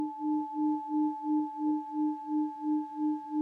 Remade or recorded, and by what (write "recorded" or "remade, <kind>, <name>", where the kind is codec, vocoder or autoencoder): recorded